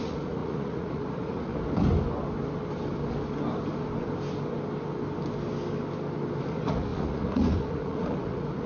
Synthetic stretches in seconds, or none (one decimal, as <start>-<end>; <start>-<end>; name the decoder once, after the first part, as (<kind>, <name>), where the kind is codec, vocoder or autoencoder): 0.0-1.5 (vocoder, Vocos); 6.4-8.7